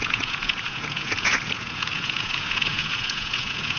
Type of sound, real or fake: fake